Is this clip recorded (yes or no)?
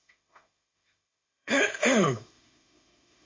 no